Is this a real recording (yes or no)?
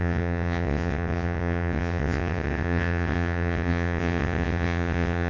no